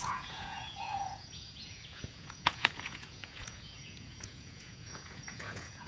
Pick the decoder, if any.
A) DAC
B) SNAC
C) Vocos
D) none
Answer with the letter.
C